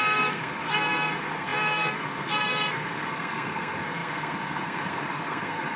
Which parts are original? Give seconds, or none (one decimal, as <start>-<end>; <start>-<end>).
none